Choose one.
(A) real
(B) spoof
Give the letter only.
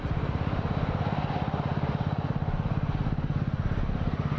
A